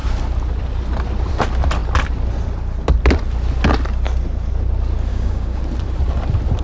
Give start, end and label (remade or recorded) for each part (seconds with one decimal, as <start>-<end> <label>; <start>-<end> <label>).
0.0-5.1 recorded; 5.1-5.6 remade; 5.6-6.6 recorded